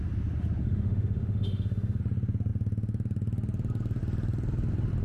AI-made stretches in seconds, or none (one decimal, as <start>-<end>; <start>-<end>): 0.6-2.0